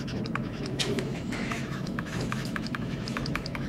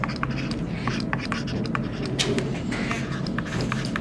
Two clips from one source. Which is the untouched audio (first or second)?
second